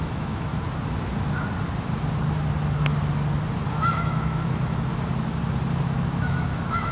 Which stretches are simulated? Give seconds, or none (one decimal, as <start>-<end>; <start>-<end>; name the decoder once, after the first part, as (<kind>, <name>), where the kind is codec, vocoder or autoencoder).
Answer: 0.0-0.5 (autoencoder, DAC-VAE); 3.7-4.9; 5.8-6.9